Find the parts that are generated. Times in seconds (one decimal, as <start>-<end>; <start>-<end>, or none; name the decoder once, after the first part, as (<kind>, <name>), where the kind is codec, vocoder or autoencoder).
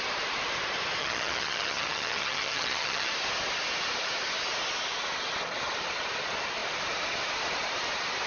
1.0-3.1 (vocoder, HiFi-GAN)